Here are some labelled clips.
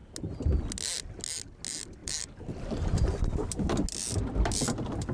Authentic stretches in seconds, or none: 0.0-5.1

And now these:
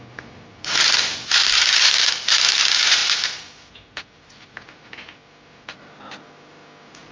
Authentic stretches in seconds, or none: 0.0-7.1